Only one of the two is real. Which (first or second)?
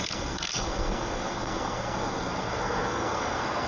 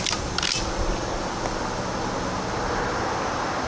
second